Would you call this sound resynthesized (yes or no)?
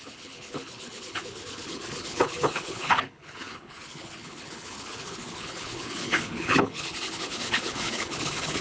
yes